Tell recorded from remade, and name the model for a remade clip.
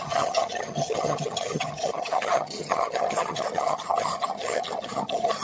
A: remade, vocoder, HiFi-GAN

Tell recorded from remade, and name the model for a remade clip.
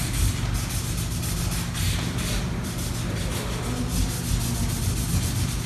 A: recorded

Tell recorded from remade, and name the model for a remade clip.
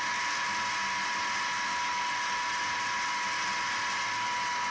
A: recorded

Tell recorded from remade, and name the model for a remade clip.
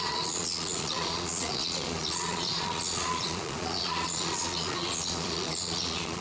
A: remade, vocoder, Vocos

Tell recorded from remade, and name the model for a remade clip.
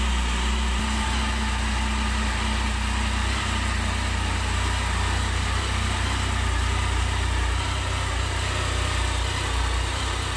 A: recorded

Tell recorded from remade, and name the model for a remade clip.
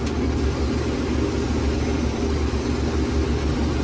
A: recorded